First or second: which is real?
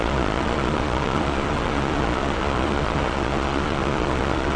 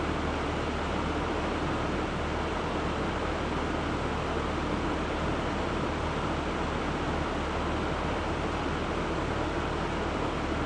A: second